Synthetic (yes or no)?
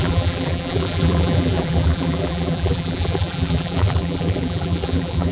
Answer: yes